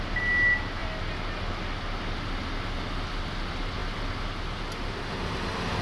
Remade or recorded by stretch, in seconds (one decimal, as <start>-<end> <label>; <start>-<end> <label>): 0.0-5.8 recorded